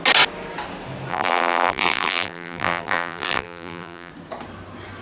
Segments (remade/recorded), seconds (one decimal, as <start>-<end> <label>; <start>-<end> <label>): 0.0-1.1 recorded; 1.1-4.1 remade; 4.1-5.0 recorded